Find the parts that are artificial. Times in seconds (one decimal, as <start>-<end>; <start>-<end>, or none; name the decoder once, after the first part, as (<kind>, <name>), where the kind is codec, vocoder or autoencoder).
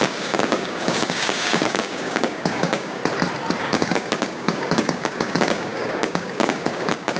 0.0-3.0 (codec, DAC); 3.6-7.2